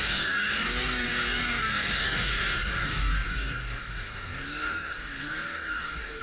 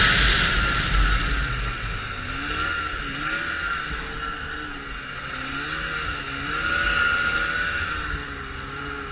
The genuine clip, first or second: second